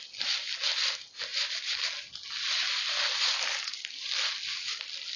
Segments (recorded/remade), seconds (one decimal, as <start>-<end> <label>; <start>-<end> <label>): 0.0-5.2 recorded